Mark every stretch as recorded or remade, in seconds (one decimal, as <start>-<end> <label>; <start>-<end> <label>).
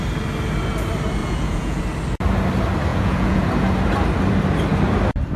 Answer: 0.0-1.2 recorded; 1.2-1.8 remade; 1.8-2.9 recorded; 2.9-3.4 remade; 3.4-5.4 recorded